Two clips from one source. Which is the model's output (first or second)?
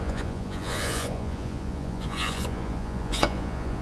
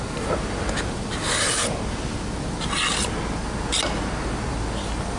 first